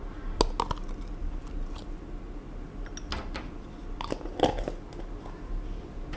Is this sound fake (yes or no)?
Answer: no